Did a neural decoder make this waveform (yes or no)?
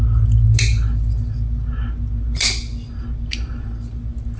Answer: no